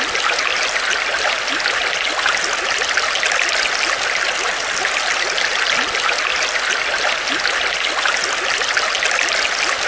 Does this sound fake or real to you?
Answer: real